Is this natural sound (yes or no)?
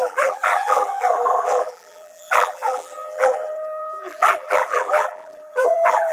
no